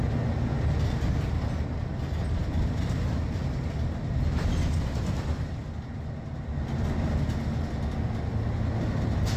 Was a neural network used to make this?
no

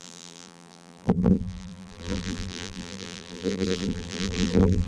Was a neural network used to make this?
yes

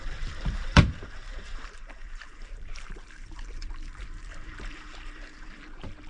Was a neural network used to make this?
yes